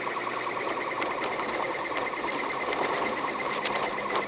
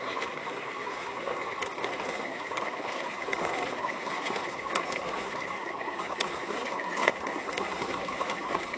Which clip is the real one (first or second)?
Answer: first